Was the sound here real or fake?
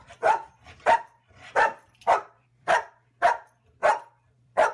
fake